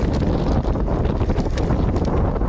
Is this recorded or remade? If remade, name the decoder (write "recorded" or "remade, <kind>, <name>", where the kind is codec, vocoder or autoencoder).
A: recorded